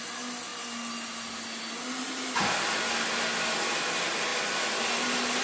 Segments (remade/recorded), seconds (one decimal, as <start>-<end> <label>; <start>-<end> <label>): 0.0-5.4 recorded